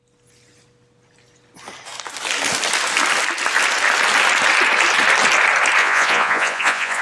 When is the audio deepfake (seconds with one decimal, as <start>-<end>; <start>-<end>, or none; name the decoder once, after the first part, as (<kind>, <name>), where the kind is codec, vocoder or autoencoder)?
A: 5.8-7.0 (vocoder, Vocos)